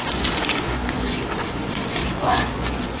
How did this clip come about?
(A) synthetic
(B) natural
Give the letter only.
A